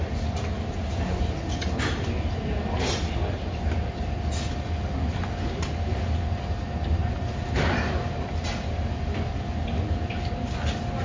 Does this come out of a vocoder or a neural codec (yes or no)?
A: no